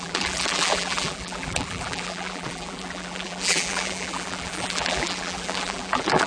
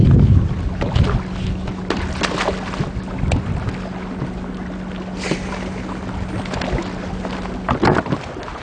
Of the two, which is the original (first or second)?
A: second